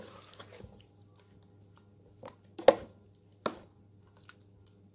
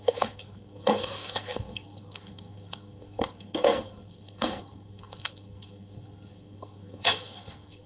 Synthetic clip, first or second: second